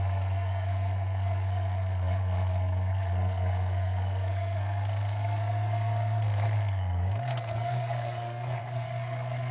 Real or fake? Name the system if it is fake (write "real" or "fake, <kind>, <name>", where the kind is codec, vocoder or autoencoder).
fake, codec, SNAC